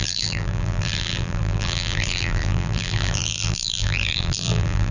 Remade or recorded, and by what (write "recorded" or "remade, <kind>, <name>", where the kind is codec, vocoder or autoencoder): remade, vocoder, BigVGAN v2